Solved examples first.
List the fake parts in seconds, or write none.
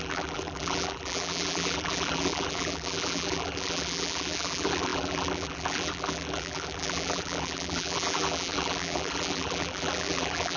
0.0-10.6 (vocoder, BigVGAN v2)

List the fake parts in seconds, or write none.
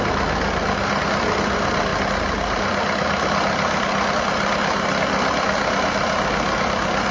none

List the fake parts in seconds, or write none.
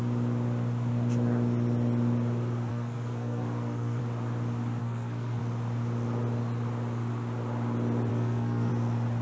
2.7-4.0 (codec, SNAC); 4.8-5.4; 8.1-8.7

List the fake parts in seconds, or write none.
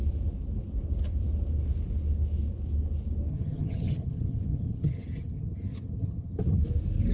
3.3-6.4 (vocoder, HiFi-GAN)